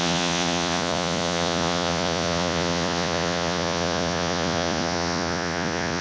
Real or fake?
fake